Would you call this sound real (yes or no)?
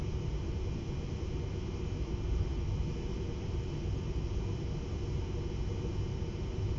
yes